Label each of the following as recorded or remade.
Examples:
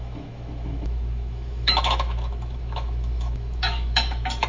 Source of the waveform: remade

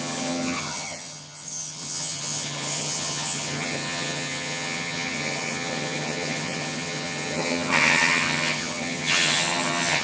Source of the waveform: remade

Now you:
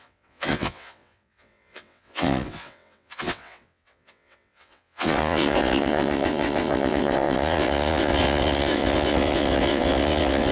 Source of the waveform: remade